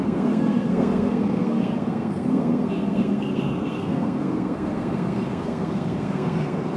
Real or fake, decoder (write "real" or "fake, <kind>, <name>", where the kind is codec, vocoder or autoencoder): fake, codec, SNAC